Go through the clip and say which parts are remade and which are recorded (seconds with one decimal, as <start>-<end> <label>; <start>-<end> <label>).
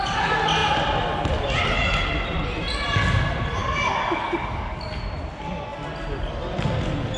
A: 0.0-3.6 recorded; 3.6-5.0 remade; 5.0-7.2 recorded